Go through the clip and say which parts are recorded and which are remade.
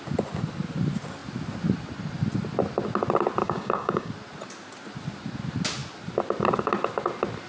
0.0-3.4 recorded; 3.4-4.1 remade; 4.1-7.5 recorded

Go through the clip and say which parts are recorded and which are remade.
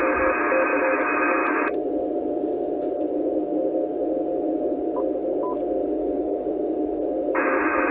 0.0-6.0 recorded; 6.0-6.5 remade; 6.5-7.9 recorded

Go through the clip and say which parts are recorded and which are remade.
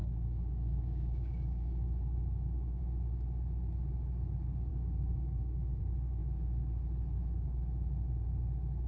0.0-2.8 remade; 2.8-4.7 recorded; 4.7-5.8 remade; 5.8-8.9 recorded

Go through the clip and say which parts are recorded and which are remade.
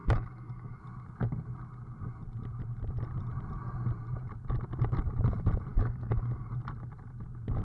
0.0-0.8 remade; 0.8-5.7 recorded; 5.7-6.5 remade; 6.5-7.6 recorded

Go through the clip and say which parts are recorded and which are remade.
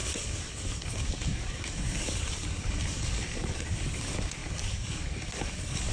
0.0-5.9 remade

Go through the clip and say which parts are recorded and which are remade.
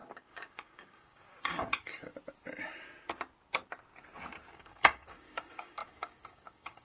0.0-2.1 remade; 2.1-4.5 recorded; 4.5-6.8 remade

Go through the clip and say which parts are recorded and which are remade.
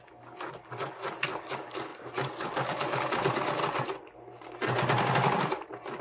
0.0-3.6 remade; 3.6-6.0 recorded